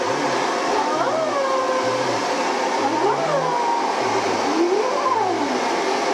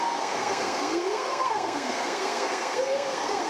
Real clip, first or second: first